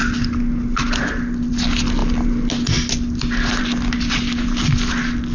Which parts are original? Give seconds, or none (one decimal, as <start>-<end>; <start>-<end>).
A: 0.0-5.3